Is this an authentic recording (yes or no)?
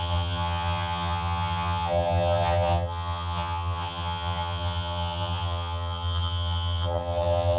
no